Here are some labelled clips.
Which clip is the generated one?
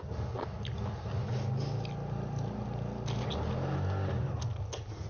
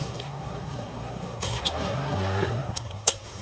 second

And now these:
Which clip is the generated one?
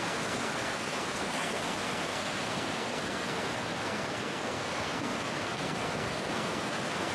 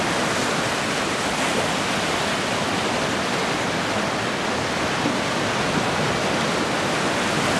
first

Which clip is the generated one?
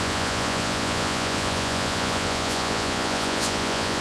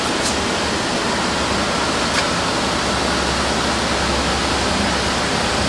first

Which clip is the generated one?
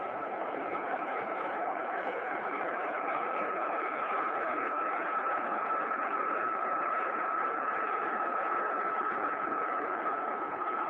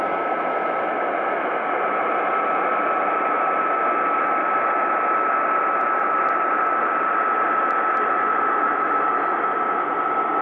first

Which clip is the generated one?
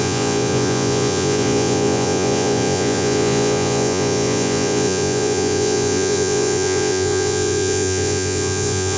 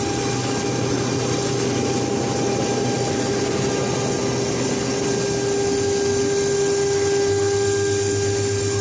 first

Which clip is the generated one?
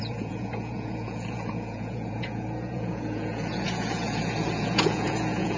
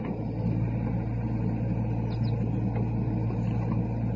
first